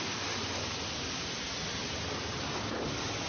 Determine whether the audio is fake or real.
real